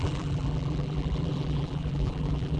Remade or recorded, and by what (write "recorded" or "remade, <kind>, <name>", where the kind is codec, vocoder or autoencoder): remade, vocoder, BigVGAN v2